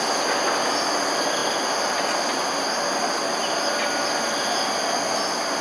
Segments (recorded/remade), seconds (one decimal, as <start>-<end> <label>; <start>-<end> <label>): 0.0-5.6 recorded

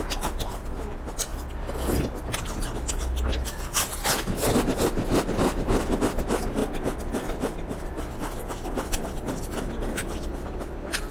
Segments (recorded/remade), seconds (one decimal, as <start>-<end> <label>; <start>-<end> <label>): 0.0-11.1 recorded

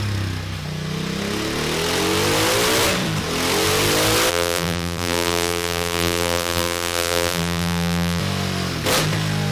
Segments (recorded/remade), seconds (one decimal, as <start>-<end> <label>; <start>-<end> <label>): 0.0-4.3 recorded; 4.3-8.2 remade; 8.2-9.5 recorded